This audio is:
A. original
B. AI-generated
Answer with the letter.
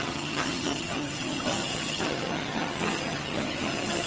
B